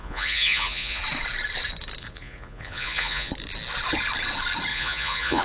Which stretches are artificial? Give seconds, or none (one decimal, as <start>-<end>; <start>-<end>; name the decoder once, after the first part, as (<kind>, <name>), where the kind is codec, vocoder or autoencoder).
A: 0.0-1.0 (vocoder, Vocos); 2.0-3.3; 4.7-5.4